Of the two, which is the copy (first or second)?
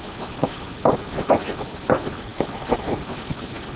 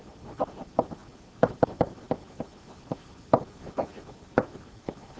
second